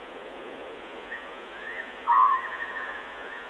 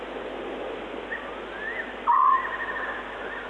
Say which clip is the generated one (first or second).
first